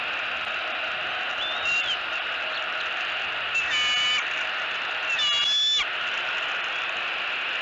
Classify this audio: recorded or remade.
recorded